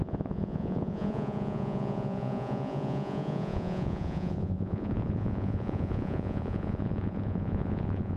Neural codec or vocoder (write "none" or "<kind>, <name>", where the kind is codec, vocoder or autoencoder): vocoder, Vocos